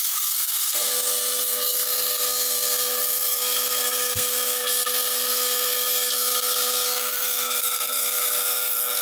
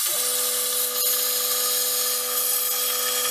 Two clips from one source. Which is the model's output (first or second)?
first